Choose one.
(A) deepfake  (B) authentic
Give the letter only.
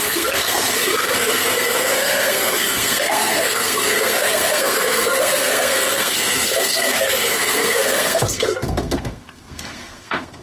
A